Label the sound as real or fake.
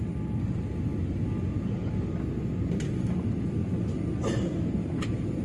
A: real